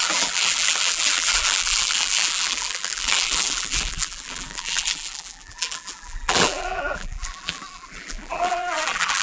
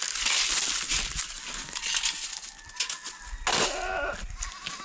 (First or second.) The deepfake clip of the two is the first